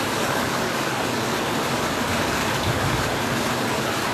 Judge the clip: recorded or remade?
remade